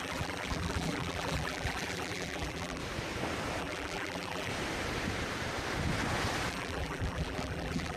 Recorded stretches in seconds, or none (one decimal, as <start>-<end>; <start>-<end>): 2.8-3.6; 4.5-6.5